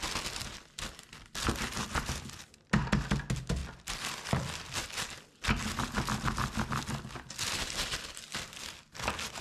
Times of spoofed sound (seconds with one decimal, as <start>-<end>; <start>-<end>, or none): none